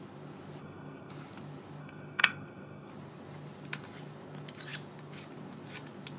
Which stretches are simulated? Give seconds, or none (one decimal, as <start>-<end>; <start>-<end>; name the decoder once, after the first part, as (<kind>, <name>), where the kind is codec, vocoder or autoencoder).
0.6-1.1 (codec, SNAC); 1.8-2.9